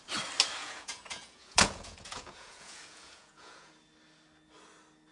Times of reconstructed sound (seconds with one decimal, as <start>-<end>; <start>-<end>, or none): 0.6-3.7